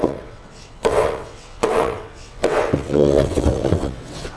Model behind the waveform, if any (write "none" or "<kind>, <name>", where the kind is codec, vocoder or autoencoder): vocoder, WaveNeXt